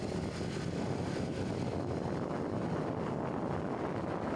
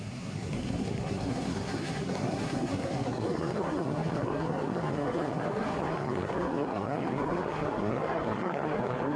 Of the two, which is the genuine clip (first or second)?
first